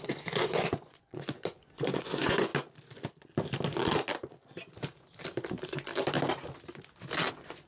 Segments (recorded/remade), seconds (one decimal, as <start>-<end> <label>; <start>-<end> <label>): 0.0-2.5 remade; 2.5-5.5 recorded; 5.5-5.9 remade; 5.9-7.3 recorded; 7.3-7.7 remade

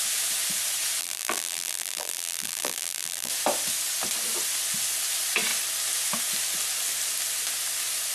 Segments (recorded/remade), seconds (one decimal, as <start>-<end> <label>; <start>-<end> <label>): 0.0-1.0 recorded; 1.0-3.3 remade; 3.3-8.1 recorded